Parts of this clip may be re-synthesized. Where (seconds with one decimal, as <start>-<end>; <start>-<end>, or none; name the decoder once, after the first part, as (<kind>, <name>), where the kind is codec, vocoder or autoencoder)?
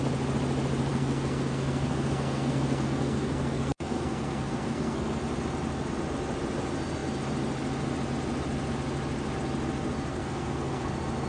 0.9-5.2 (codec, SNAC); 10.1-10.9